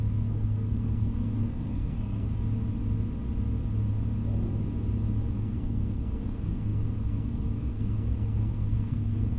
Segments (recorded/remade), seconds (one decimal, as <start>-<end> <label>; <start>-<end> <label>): 0.0-2.3 remade; 2.3-5.3 recorded; 5.3-9.4 remade

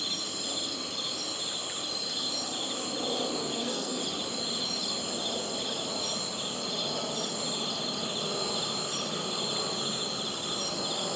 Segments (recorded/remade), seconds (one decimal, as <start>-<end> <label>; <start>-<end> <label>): 0.0-3.4 recorded; 3.4-4.0 remade; 4.0-11.2 recorded

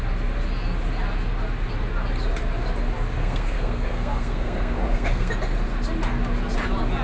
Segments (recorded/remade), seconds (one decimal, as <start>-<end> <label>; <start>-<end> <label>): 0.0-3.2 recorded; 3.2-5.3 remade; 5.3-7.0 recorded

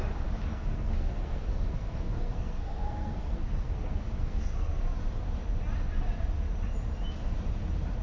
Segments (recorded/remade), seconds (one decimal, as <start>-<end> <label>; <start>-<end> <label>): 0.0-0.5 recorded; 0.5-4.8 remade; 4.8-8.0 recorded

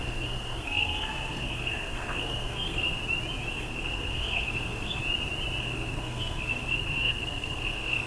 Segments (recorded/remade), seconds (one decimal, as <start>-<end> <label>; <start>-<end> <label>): 0.0-3.0 remade; 3.0-3.5 recorded; 3.5-5.0 remade; 5.0-5.6 recorded; 5.6-8.1 remade